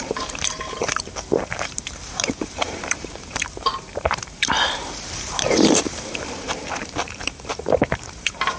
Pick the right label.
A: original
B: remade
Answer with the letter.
B